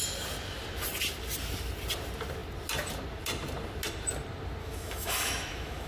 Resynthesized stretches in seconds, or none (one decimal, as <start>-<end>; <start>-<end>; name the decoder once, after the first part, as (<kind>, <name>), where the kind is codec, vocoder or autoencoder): 4.6-5.9 (autoencoder, DAC-VAE)